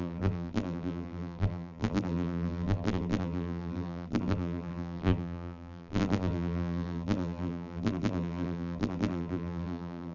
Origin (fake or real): fake